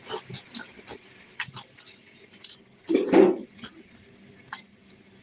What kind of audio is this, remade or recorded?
recorded